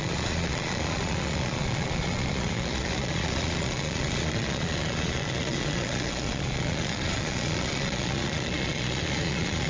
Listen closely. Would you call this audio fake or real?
fake